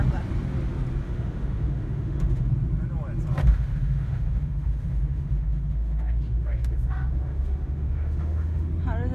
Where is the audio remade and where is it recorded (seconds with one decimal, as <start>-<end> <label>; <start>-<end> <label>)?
0.0-1.0 recorded; 1.0-2.5 remade; 2.5-3.4 recorded; 3.4-8.7 remade; 8.7-9.1 recorded